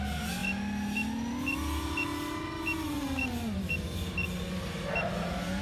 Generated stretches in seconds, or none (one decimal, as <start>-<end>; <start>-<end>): none